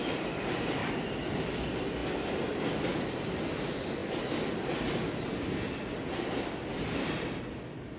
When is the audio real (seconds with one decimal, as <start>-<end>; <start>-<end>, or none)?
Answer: 0.0-8.0